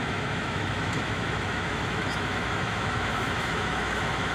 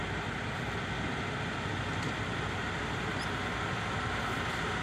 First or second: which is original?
second